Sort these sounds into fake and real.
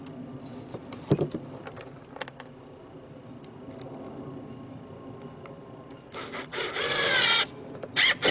real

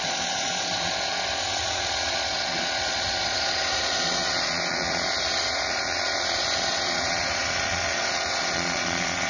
fake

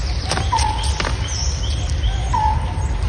real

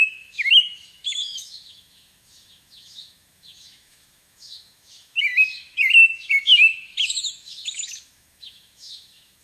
fake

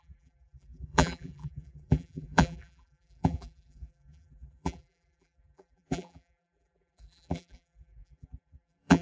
fake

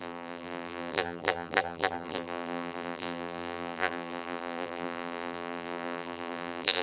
fake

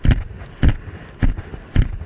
real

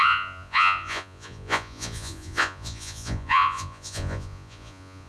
fake